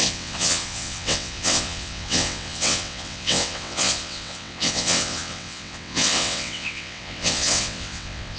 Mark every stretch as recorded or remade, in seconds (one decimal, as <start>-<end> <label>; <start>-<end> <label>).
0.0-8.4 remade